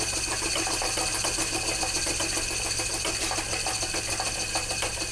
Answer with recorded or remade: recorded